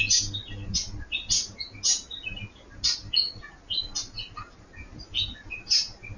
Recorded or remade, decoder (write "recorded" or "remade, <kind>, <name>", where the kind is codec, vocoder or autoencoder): recorded